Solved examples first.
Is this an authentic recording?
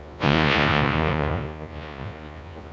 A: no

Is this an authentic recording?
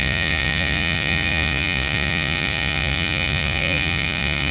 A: no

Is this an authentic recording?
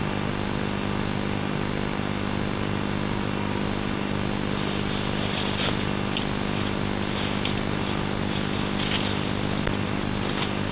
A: yes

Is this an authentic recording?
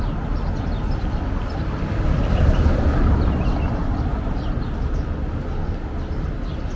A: yes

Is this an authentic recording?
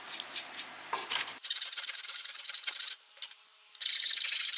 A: no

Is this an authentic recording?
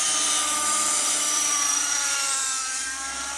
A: no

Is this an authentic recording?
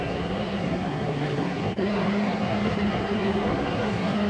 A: no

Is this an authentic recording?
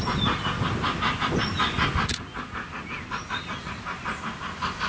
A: yes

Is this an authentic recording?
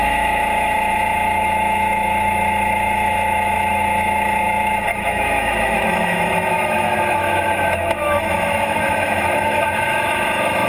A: no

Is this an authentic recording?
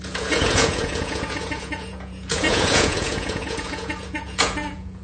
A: no